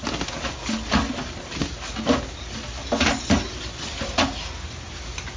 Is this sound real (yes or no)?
yes